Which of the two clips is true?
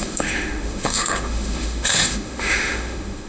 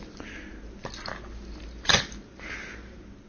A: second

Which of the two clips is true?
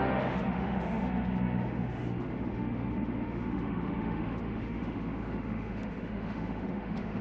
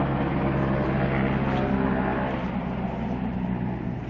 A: second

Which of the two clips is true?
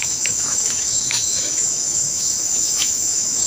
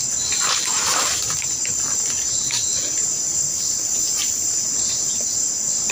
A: second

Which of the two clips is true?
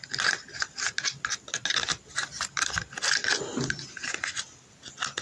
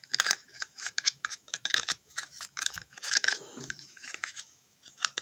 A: first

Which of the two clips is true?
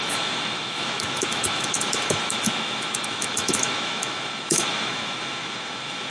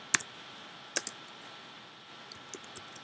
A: second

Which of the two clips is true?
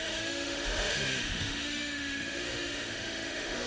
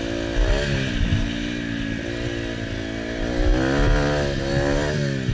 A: second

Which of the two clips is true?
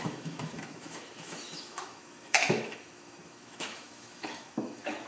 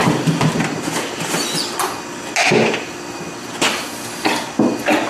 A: second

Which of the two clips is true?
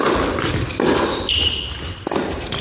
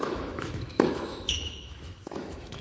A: first